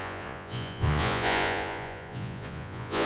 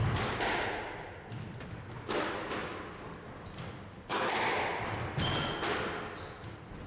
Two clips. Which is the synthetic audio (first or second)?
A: first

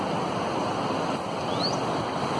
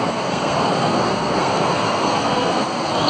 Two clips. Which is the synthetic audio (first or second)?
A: second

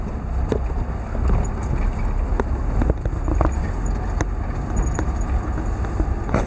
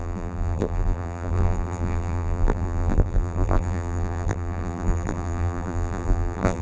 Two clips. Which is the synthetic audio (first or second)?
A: second